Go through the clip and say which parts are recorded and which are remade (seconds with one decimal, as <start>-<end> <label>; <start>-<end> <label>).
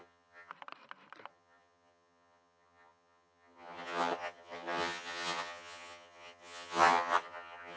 0.0-0.5 remade; 0.5-1.3 recorded; 1.3-7.8 remade